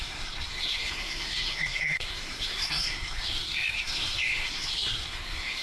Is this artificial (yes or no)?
yes